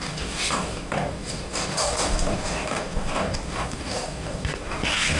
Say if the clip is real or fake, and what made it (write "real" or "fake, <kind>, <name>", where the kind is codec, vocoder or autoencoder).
fake, codec, DAC